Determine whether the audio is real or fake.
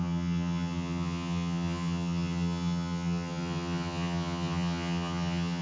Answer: fake